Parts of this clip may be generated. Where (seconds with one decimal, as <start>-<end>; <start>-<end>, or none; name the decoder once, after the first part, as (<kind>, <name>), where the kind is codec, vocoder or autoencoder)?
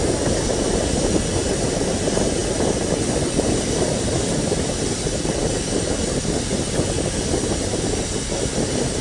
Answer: 2.4-6.4 (vocoder, BigVGAN v2)